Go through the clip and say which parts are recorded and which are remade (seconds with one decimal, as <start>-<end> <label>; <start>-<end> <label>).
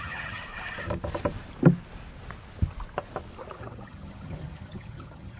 0.0-0.4 remade; 0.4-3.6 recorded; 3.6-5.4 remade